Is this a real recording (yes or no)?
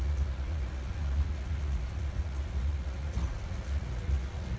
no